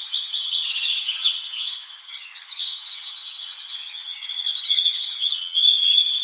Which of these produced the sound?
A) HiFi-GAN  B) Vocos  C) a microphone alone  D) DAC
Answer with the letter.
A